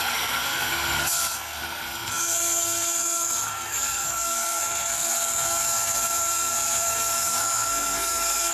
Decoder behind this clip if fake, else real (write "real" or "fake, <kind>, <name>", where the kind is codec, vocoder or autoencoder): fake, codec, SNAC